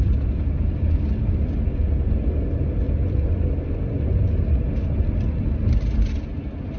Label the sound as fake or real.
real